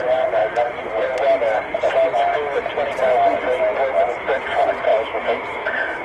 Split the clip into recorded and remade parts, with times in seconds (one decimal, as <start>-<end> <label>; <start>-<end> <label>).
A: 0.0-4.9 recorded; 4.9-6.0 remade